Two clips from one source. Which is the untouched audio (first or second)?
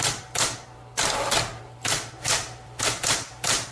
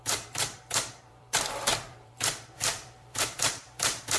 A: first